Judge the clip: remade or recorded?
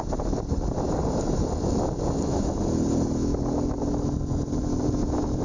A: recorded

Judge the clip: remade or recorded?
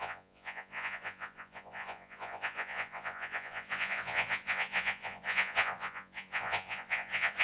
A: remade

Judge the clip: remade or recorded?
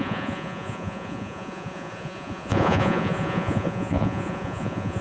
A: remade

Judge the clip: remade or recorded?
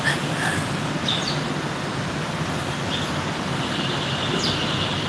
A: recorded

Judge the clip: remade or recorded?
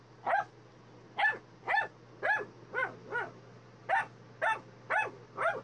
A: recorded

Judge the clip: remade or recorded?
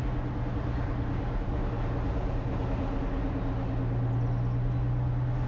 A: recorded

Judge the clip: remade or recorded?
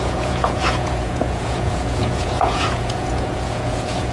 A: remade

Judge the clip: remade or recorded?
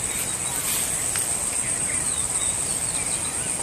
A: recorded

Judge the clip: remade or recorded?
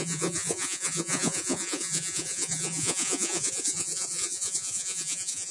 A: remade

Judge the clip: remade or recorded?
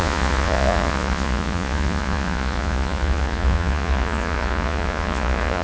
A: remade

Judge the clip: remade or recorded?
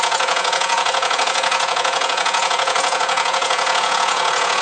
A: remade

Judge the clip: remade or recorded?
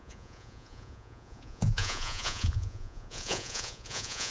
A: remade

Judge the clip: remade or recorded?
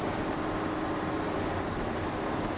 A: recorded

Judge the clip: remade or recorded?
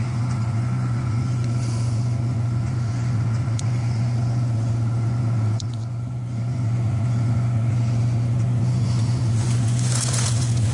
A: remade